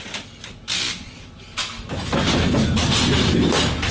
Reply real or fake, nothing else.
real